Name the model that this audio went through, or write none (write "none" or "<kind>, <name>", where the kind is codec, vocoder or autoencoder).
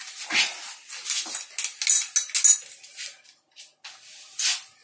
none